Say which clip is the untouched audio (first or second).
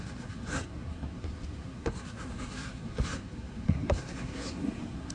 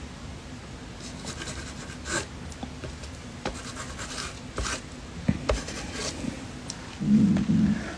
second